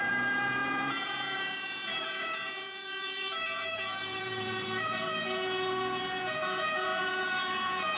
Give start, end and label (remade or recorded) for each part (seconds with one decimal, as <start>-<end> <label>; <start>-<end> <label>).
0.0-8.0 remade